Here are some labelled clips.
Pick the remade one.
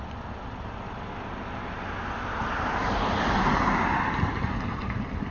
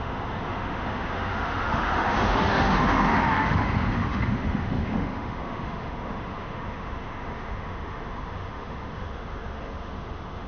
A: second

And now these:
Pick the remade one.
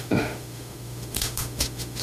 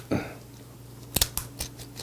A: first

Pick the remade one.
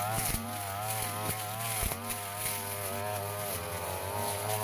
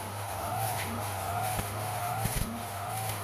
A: second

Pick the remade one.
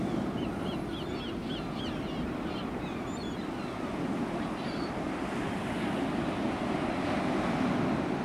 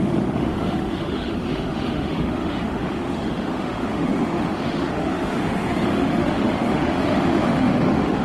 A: second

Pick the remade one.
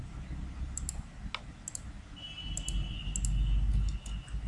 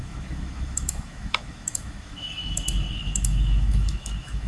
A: second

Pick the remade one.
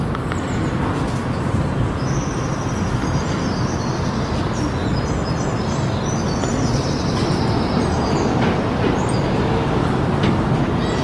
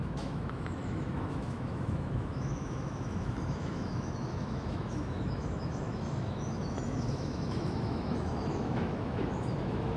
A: second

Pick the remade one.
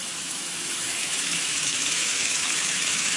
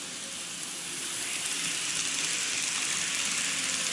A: first